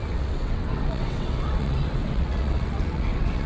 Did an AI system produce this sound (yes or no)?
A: yes